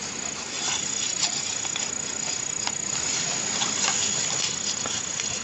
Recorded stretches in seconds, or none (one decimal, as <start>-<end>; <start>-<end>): 0.0-5.4